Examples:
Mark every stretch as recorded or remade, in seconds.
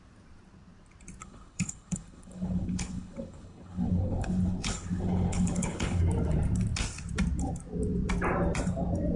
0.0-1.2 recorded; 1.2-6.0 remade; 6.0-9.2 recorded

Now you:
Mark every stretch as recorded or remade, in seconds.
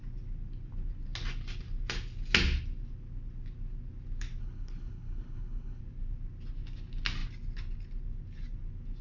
0.0-4.4 recorded; 4.4-5.8 remade; 5.8-9.0 recorded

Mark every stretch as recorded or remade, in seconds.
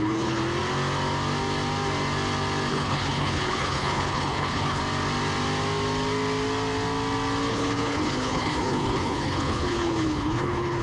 0.0-0.4 remade; 0.4-2.7 recorded; 2.7-4.8 remade; 4.8-7.5 recorded; 7.5-10.8 remade